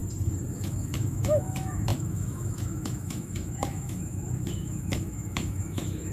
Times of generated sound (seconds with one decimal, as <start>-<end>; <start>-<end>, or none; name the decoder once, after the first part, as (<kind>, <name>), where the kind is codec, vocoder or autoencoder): 0.5-6.1 (autoencoder, DAC-VAE)